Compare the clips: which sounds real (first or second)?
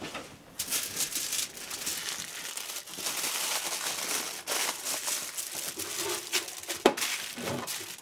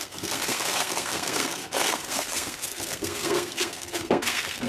first